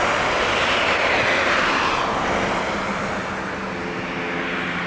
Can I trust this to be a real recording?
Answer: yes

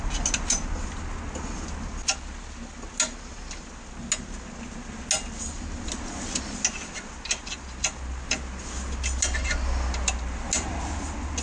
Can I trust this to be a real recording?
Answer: yes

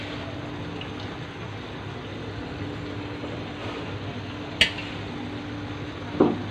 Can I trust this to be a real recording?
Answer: yes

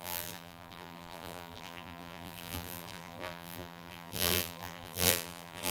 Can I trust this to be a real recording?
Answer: no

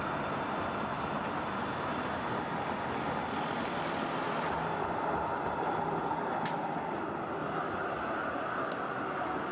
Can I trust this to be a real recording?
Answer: yes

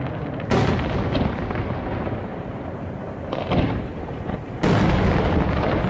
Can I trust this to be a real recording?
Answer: yes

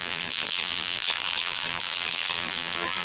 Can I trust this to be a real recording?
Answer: no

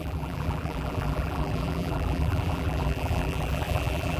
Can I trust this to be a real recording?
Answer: no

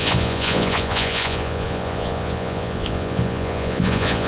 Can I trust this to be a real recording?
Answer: no